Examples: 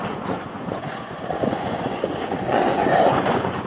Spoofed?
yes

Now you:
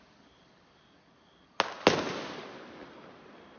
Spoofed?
no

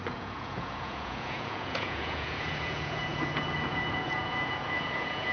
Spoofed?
yes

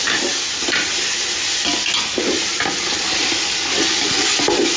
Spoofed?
no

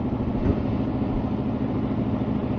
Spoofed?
no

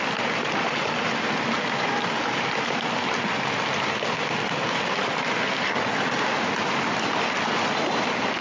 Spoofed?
no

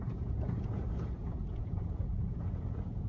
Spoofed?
yes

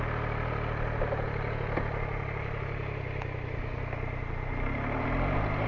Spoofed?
no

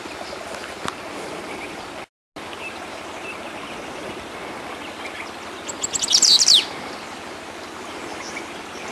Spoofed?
no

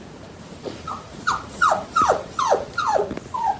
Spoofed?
yes